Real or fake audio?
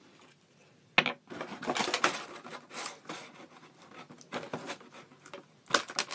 real